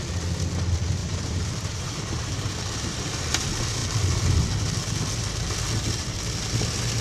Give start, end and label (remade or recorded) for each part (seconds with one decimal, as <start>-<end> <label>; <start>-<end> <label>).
0.0-1.0 recorded; 1.0-2.5 remade; 2.5-7.0 recorded